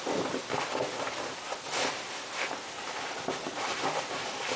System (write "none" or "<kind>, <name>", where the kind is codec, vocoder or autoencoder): none